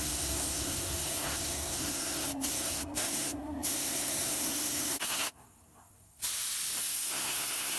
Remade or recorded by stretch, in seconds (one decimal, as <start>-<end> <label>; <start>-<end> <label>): 0.0-6.2 remade; 6.2-6.8 recorded; 6.8-7.8 remade